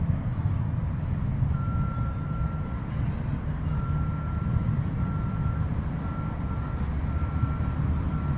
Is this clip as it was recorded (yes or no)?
yes